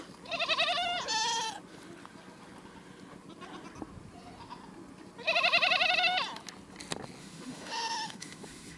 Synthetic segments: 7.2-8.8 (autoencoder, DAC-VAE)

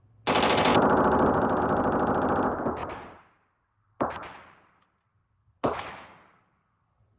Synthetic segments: 2.8-3.7 (vocoder, BigVGAN v2)

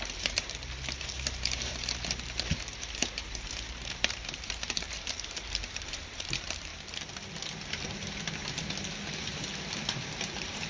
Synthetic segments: 0.0-6.7 (vocoder, BigVGAN v2); 9.7-10.7

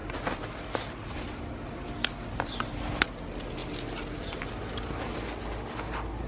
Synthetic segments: 0.0-2.8 (vocoder, BigVGAN v2)

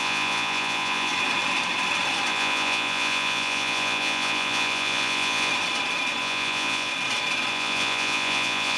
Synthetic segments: 0.0-1.1 (vocoder, Vocos); 2.3-5.5; 6.2-6.9; 7.5-8.8

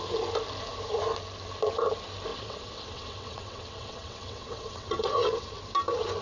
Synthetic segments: 2.3-5.6 (vocoder, WaveNeXt)

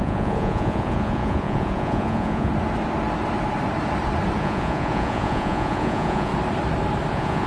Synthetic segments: 0.0-2.5 (vocoder, Vocos); 4.4-6.3; 7.1-7.5

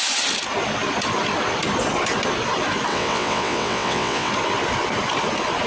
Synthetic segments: 2.9-4.3 (vocoder, WaveNeXt)